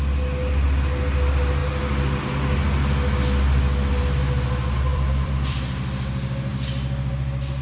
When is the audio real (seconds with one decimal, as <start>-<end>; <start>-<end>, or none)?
0.0-4.9; 5.6-7.6